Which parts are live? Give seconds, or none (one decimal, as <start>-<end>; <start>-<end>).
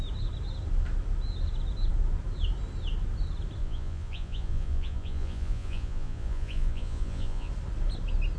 0.0-3.6; 7.5-8.4